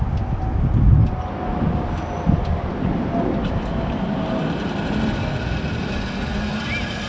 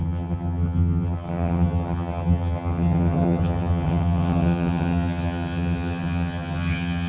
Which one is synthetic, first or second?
second